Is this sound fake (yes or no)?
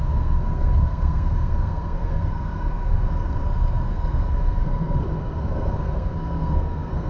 yes